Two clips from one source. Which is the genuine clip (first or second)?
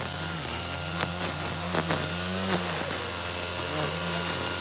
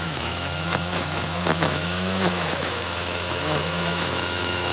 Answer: first